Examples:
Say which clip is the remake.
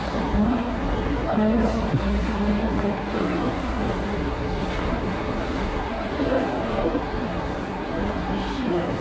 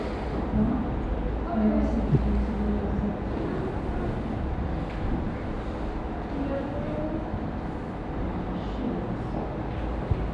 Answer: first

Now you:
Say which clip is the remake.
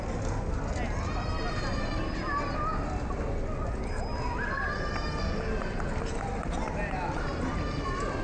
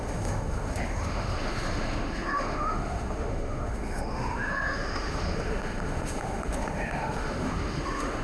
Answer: second